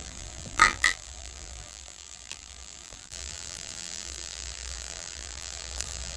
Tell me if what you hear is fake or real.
fake